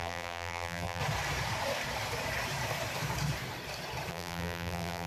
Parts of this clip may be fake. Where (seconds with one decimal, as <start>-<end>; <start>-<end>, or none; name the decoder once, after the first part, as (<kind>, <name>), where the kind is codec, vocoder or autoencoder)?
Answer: 0.0-1.0 (vocoder, BigVGAN v2); 4.1-5.1